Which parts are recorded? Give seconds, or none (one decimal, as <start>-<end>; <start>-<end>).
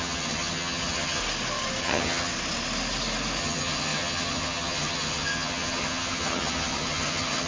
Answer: 1.2-1.8; 2.3-3.4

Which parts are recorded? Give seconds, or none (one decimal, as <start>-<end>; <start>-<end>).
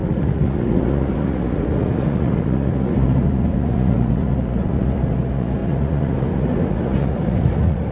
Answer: none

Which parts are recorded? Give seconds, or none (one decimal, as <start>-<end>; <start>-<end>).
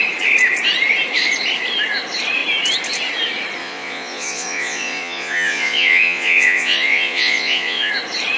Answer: 0.0-3.6; 7.9-8.4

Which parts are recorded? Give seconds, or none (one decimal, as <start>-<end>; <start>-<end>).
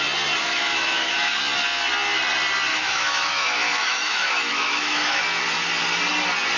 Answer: 0.0-0.4; 1.4-2.7; 5.2-6.6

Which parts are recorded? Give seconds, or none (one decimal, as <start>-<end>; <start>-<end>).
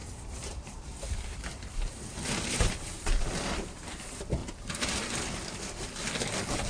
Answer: 4.0-4.4; 5.2-6.7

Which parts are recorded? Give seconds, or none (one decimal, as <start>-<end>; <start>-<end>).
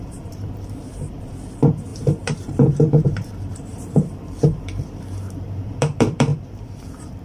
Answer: none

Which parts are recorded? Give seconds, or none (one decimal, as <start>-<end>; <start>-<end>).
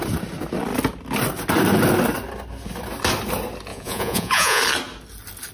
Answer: 0.0-3.7; 4.6-5.5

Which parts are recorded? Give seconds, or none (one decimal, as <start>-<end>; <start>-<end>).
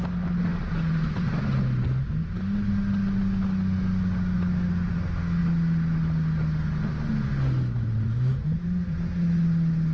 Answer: 0.0-0.5; 1.4-9.9